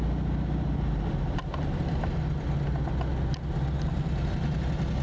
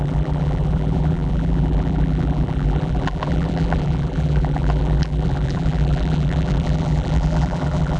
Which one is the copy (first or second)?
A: second